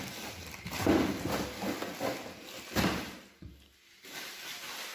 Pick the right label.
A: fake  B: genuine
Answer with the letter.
B